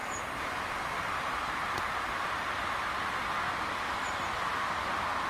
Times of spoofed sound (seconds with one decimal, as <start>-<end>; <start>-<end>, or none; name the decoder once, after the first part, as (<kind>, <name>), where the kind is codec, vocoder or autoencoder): 0.0-3.2 (vocoder, BigVGAN v2)